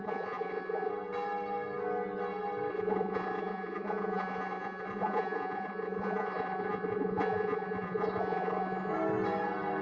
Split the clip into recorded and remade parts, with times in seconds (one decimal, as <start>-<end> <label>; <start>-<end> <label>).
0.0-0.9 remade; 0.9-2.7 recorded; 2.7-8.9 remade; 8.9-9.8 recorded